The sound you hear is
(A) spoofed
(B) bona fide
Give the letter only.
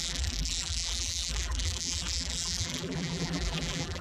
A